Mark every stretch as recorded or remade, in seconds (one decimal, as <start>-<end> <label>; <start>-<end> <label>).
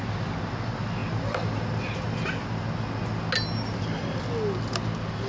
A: 0.0-5.3 recorded